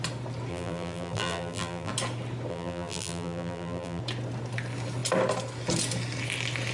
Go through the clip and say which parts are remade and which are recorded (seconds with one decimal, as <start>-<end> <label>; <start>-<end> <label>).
0.0-0.5 recorded; 0.5-1.9 remade; 1.9-2.5 recorded; 2.5-4.0 remade; 4.0-6.7 recorded

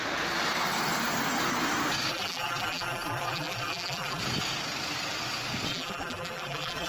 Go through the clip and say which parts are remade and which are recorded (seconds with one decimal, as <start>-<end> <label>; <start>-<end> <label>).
0.0-2.1 recorded; 2.1-4.2 remade; 4.2-5.7 recorded; 5.7-6.9 remade

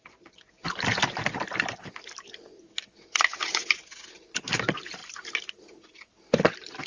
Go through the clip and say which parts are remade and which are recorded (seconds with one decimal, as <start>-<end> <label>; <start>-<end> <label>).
0.0-1.4 remade; 1.4-5.0 recorded; 5.0-5.6 remade; 5.6-6.9 recorded

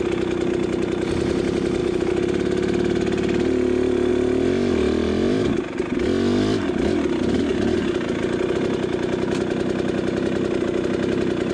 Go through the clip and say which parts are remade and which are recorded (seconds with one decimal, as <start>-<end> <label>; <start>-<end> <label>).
0.0-11.5 recorded

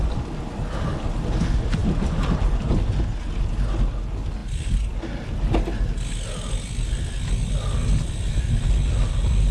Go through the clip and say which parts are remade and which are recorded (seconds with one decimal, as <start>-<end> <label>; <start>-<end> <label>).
0.0-1.8 recorded; 1.8-2.7 remade; 2.7-9.5 recorded

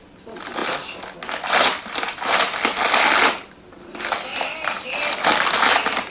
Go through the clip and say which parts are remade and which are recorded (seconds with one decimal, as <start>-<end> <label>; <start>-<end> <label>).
0.0-6.1 recorded

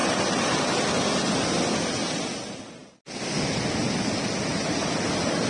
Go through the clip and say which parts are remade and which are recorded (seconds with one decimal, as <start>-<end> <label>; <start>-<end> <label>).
0.0-0.6 remade; 0.6-5.5 recorded

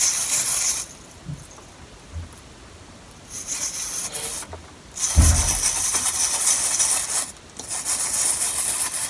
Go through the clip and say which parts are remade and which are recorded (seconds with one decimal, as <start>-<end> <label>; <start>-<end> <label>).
0.0-9.1 recorded